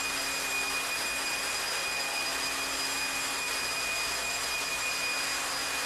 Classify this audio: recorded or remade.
recorded